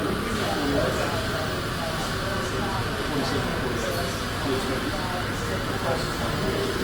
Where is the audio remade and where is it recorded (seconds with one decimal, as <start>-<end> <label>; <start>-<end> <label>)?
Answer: 0.0-6.8 recorded